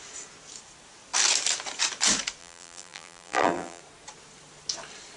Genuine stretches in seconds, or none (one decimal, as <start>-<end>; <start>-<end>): 0.0-2.4; 3.8-5.2